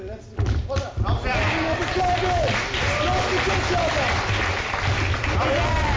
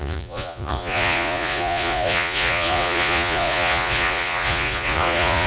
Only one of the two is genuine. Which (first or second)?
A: first